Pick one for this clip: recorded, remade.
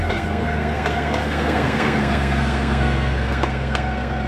remade